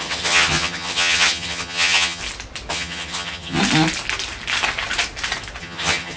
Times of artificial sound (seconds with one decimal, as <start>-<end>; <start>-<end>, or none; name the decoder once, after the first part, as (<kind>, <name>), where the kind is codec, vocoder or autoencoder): 0.0-2.2 (vocoder, HiFi-GAN); 2.7-3.6; 5.6-6.2